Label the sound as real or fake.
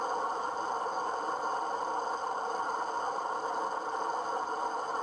real